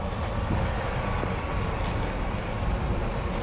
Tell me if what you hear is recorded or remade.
recorded